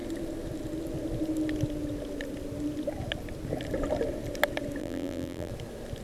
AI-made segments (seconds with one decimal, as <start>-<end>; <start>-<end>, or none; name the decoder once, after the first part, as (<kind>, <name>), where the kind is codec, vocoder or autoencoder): 4.8-5.5 (vocoder, BigVGAN v2)